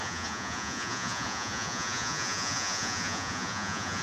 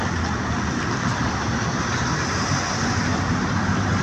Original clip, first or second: second